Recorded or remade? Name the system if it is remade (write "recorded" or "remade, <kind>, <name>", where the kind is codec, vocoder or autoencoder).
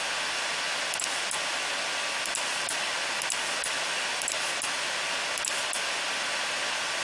recorded